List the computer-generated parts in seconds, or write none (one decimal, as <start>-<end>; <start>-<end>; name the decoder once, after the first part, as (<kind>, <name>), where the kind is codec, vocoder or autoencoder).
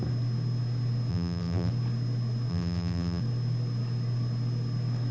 1.1-1.7 (vocoder, BigVGAN v2); 2.5-3.2